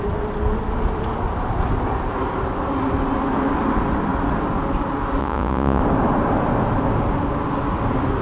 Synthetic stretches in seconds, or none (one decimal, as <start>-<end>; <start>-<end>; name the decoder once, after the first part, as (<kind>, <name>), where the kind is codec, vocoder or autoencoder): 5.2-5.8 (vocoder, Vocos)